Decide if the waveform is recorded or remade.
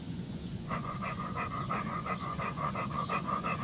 remade